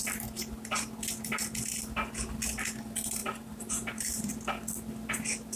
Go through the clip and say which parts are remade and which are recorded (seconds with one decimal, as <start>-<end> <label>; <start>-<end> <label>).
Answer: 0.0-3.2 recorded; 3.2-4.3 remade; 4.3-5.6 recorded